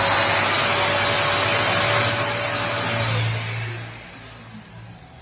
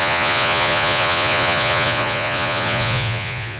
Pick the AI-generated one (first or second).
second